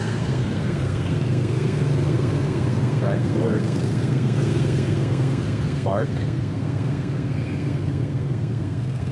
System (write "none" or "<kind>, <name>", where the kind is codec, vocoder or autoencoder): codec, SNAC